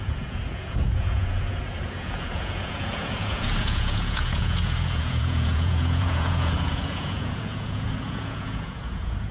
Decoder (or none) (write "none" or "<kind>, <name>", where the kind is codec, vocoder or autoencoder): vocoder, Vocos